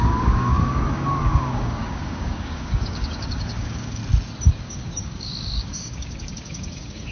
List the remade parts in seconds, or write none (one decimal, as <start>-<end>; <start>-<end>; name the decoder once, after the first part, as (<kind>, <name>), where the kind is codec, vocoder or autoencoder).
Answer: 0.0-4.0 (codec, DAC); 4.6-7.1